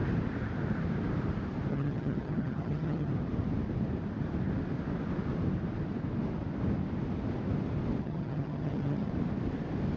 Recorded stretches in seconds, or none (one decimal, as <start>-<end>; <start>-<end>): 0.0-1.7; 3.1-8.0; 9.1-10.0

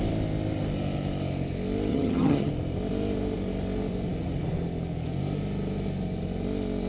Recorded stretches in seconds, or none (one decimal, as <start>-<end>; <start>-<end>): 0.0-1.9; 2.5-6.9

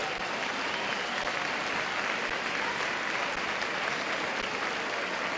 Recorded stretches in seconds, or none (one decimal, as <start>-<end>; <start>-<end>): 0.0-5.4

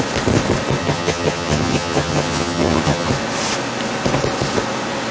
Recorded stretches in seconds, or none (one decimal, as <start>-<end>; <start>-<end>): 0.0-0.8; 3.1-5.1

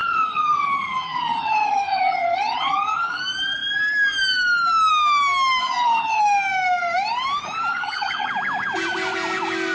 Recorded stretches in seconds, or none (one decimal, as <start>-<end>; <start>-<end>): 3.2-5.6; 6.2-7.7; 8.3-9.7

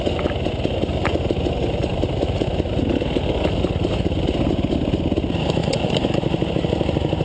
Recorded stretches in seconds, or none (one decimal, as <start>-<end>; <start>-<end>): 0.0-7.2

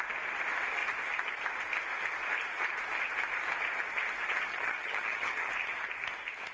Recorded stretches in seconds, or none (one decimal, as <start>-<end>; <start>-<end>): 0.0-4.5; 5.5-6.5